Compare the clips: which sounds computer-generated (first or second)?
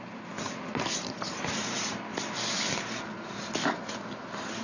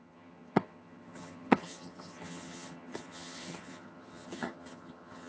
second